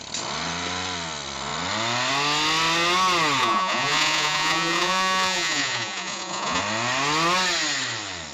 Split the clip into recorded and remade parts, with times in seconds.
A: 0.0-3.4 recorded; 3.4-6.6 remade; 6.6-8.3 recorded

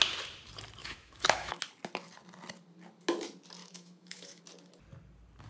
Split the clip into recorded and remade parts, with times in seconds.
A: 0.0-0.8 recorded; 0.8-1.6 remade; 1.6-3.6 recorded; 3.6-4.4 remade; 4.4-5.5 recorded

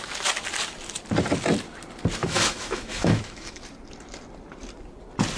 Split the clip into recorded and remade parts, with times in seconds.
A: 0.0-2.2 recorded; 2.2-3.6 remade; 3.6-5.4 recorded

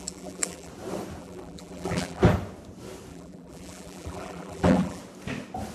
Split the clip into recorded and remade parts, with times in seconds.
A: 0.0-0.7 remade; 0.7-1.2 recorded; 1.2-2.2 remade; 2.2-3.1 recorded; 3.1-5.0 remade; 5.0-5.7 recorded

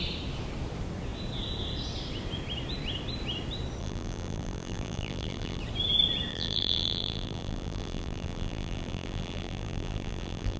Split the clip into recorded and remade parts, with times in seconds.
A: 0.0-3.8 recorded; 3.8-5.6 remade; 5.6-6.3 recorded; 6.3-10.6 remade